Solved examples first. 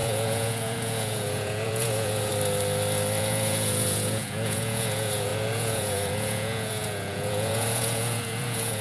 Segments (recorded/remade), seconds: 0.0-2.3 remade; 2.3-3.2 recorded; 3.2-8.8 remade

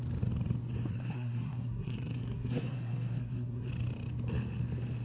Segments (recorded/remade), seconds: 0.0-0.9 recorded; 0.9-3.7 remade; 3.7-5.0 recorded